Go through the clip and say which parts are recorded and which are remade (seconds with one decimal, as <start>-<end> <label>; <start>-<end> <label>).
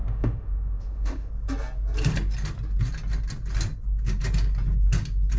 0.0-1.3 remade; 1.3-5.4 recorded